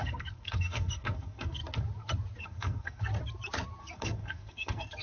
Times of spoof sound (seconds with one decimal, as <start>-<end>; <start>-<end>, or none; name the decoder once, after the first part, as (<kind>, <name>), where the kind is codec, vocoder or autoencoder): 0.0-1.6 (codec, SNAC); 2.4-3.1; 3.8-5.0